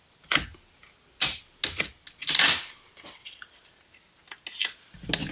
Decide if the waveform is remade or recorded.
recorded